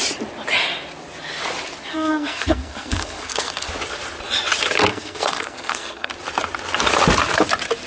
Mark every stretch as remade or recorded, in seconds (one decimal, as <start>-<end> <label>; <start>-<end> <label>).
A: 0.0-1.9 recorded; 1.9-3.7 remade; 3.7-4.9 recorded; 4.9-6.1 remade; 6.1-7.9 recorded